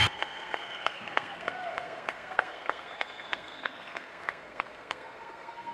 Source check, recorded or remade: remade